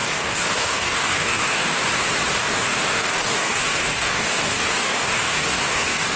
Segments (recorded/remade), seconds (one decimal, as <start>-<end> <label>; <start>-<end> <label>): 0.0-1.8 remade; 1.8-2.4 recorded; 2.4-6.2 remade